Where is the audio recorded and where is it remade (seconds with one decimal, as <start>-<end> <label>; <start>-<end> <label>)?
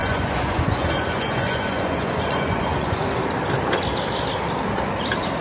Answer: 0.0-3.2 remade; 3.2-5.4 recorded